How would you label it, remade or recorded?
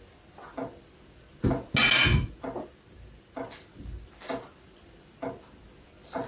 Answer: recorded